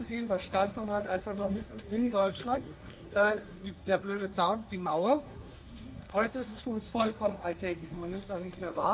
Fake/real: fake